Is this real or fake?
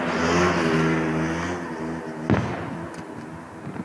real